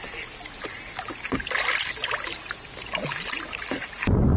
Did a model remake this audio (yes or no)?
no